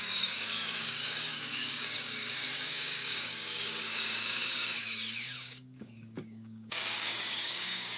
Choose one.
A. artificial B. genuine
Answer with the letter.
A